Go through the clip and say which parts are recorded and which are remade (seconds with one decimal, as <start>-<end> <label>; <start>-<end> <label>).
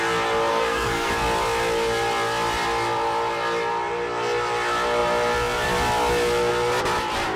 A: 0.0-0.5 recorded; 0.5-1.1 remade; 1.1-7.4 recorded